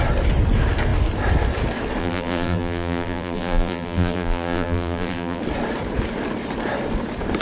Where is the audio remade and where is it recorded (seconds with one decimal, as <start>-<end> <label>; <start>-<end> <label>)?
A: 0.0-2.0 recorded; 2.0-5.4 remade; 5.4-7.4 recorded